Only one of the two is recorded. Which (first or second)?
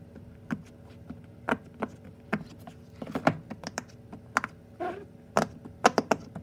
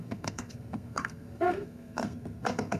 first